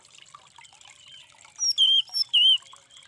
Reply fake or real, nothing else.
real